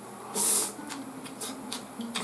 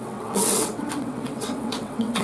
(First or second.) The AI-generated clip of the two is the second